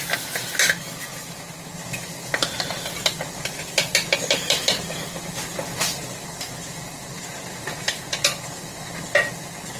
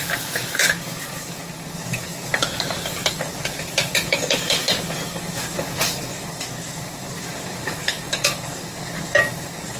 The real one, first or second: first